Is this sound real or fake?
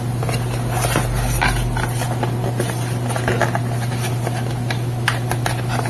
real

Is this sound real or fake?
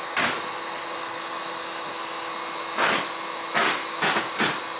real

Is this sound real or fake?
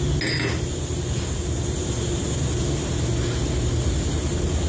real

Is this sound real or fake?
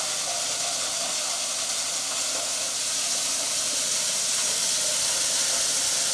real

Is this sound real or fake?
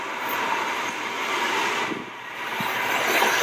fake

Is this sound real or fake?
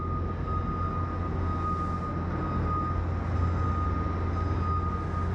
real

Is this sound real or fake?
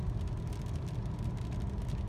real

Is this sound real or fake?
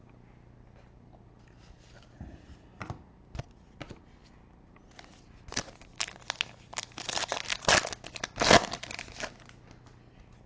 real